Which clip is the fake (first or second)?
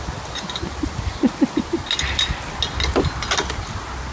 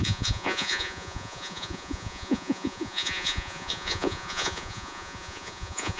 second